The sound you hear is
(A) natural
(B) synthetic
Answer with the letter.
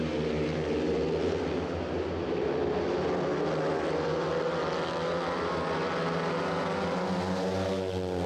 A